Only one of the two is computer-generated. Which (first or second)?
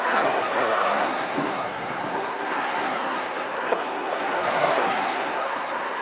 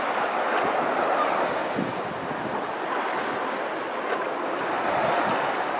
first